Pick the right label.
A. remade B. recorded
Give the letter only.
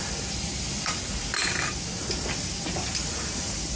B